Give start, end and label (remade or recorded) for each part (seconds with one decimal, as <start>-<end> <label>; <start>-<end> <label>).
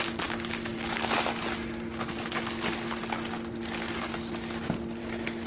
0.0-5.5 recorded